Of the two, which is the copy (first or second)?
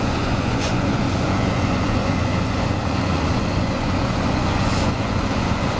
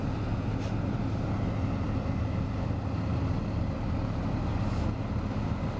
first